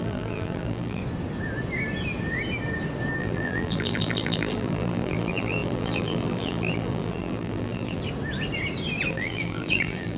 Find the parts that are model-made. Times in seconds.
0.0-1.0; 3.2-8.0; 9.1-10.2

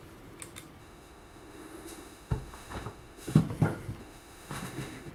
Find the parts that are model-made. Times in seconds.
0.8-3.4; 4.0-5.1

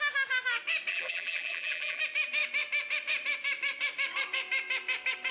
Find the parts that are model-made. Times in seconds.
0.9-2.0